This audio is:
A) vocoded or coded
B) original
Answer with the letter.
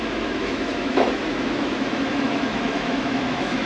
A